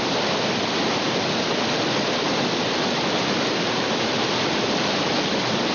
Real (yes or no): yes